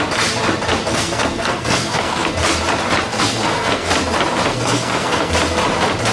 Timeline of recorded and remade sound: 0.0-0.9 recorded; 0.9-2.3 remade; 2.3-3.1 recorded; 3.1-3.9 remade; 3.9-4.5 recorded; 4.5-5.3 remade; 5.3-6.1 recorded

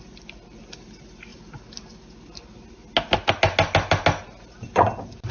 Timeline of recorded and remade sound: 0.0-5.3 recorded

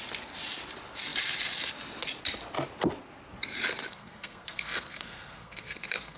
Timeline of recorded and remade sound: 0.0-3.9 recorded; 3.9-6.2 remade

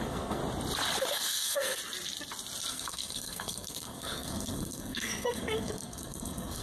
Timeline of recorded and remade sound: 0.0-0.4 remade; 0.4-1.1 recorded; 1.1-1.8 remade; 1.8-2.7 recorded; 2.7-6.6 remade

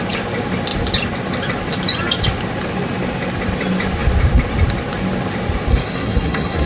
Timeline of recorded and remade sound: 0.0-5.7 recorded; 5.7-6.7 remade

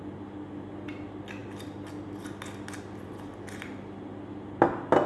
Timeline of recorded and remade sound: 0.0-5.1 recorded

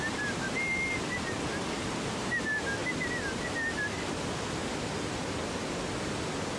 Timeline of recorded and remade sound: 0.0-6.6 recorded